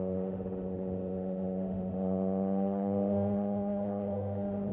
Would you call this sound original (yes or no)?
no